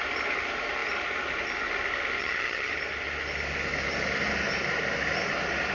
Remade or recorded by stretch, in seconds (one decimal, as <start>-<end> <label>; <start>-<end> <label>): 0.0-2.2 recorded; 2.2-2.7 remade; 2.7-5.7 recorded